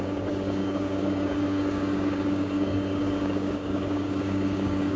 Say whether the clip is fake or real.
fake